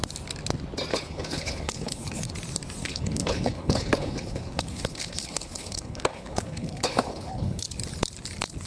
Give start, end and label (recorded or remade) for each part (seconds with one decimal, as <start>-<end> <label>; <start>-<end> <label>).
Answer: 0.0-0.9 recorded; 0.9-2.3 remade; 2.3-2.8 recorded; 2.8-7.6 remade; 7.6-8.7 recorded